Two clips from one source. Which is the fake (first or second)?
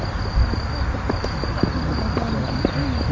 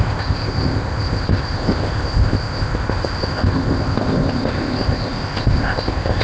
second